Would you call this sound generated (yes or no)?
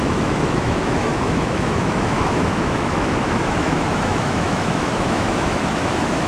yes